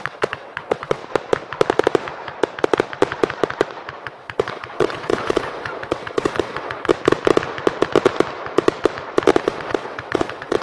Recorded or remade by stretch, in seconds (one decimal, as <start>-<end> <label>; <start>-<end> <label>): 0.0-1.0 remade; 1.0-4.0 recorded; 4.0-6.9 remade; 6.9-9.4 recorded; 9.4-10.6 remade